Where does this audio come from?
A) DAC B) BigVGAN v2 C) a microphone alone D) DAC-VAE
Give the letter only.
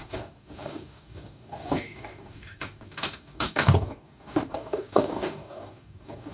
A